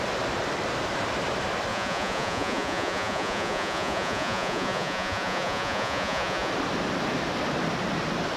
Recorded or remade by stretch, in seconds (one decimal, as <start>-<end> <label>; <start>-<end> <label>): 0.0-1.7 recorded; 1.7-6.5 remade; 6.5-8.4 recorded